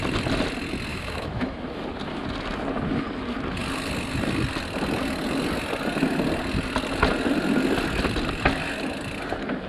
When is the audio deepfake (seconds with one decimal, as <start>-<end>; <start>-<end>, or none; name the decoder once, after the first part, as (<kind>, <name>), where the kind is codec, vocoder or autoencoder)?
0.9-1.6 (autoencoder, DAC-VAE)